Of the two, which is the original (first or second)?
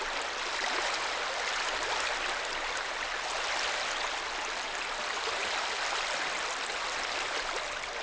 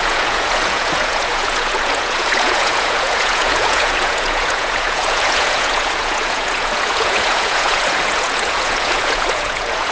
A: first